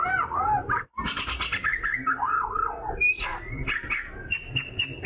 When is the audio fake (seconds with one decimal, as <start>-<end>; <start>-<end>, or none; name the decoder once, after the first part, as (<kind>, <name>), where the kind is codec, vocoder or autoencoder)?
0.6-1.3 (vocoder, BigVGAN v2); 3.3-3.9